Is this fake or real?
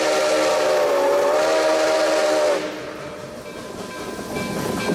real